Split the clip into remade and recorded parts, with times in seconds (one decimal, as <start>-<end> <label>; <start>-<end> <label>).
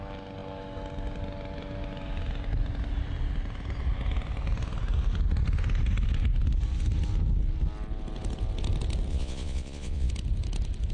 0.0-9.1 recorded; 9.1-10.1 remade; 10.1-10.9 recorded